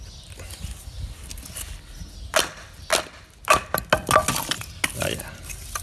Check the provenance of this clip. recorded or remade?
recorded